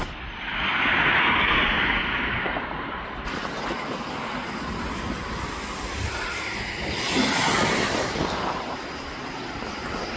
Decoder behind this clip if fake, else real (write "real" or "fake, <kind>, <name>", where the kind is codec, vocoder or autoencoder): real